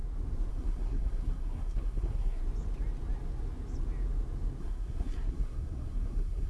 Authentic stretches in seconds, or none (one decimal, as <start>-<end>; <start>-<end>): 0.0-0.5; 2.4-4.6